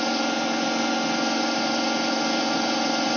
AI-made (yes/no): no